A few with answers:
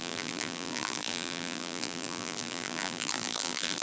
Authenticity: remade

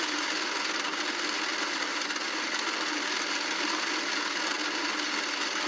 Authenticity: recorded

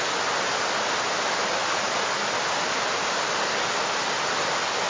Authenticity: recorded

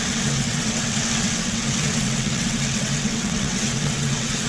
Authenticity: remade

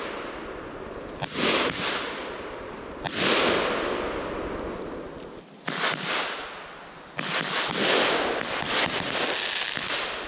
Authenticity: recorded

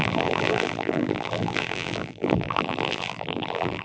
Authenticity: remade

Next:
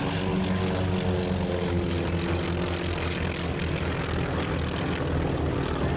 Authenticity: recorded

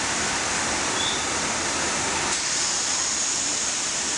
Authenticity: remade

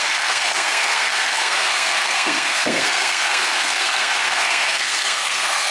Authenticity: remade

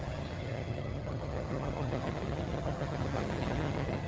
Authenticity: remade